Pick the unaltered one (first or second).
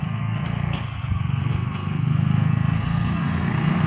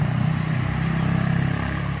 second